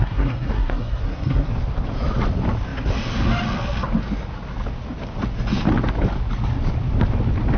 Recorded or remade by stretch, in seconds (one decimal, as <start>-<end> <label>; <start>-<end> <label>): 0.0-1.5 remade; 1.5-7.6 recorded